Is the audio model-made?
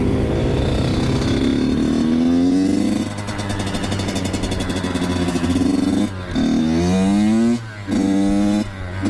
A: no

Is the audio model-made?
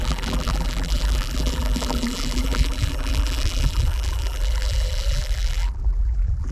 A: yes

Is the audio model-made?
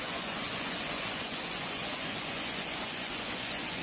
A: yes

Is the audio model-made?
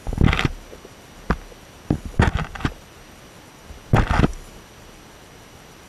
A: no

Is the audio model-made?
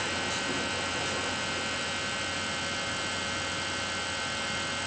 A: no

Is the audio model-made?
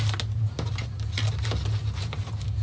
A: no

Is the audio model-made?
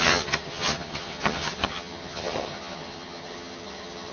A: yes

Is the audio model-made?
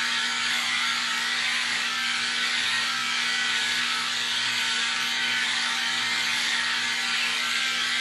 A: yes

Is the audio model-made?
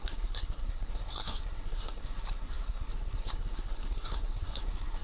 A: yes